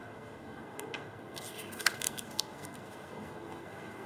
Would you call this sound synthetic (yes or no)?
yes